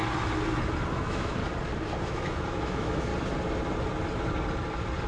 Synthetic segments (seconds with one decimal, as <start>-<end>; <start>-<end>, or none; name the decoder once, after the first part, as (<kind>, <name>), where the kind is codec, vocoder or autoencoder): 0.9-1.4 (autoencoder, DAC-VAE); 2.0-3.1